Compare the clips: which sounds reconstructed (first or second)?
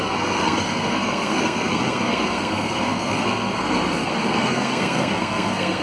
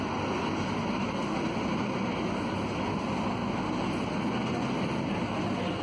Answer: first